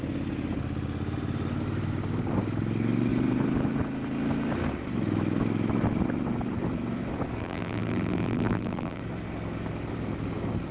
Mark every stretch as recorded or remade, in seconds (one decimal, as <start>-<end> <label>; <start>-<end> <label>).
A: 0.0-7.4 recorded; 7.4-9.0 remade; 9.0-10.7 recorded